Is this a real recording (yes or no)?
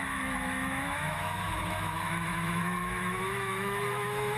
no